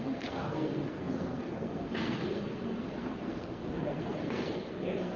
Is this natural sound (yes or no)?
no